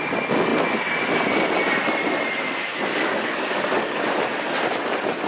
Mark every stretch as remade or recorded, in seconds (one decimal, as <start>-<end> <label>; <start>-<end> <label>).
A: 0.0-2.9 recorded; 2.9-4.0 remade; 4.0-5.3 recorded